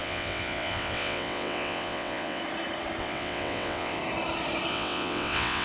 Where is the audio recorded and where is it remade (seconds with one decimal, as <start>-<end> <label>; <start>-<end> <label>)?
0.0-2.4 remade; 2.4-3.0 recorded; 3.0-4.0 remade; 4.0-4.7 recorded; 4.7-5.6 remade